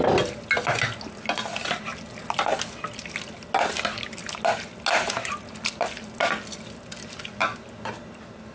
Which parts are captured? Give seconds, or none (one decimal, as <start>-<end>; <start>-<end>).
0.0-8.5